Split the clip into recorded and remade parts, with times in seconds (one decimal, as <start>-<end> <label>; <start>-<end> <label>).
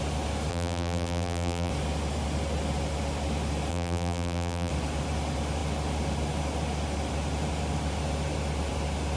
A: 0.0-0.5 recorded; 0.5-1.7 remade; 1.7-3.7 recorded; 3.7-4.7 remade; 4.7-9.2 recorded